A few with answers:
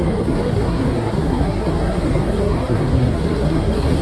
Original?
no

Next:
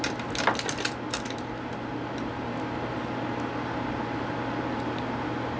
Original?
yes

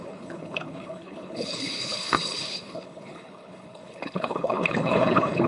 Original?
no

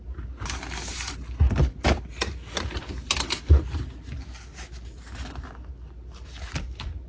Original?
yes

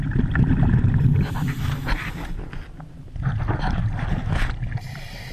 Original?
yes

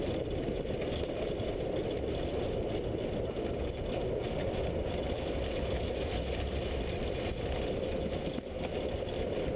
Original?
yes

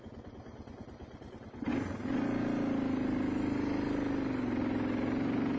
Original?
yes